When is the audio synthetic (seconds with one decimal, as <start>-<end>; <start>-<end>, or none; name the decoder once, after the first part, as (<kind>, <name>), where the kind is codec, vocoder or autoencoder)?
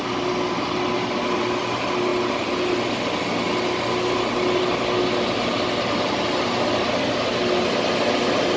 none